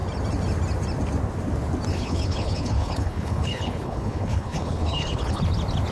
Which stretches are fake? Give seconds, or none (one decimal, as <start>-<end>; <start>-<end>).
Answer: 1.9-5.4